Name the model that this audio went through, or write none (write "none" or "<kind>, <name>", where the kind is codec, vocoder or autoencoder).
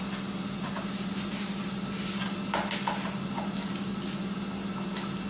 none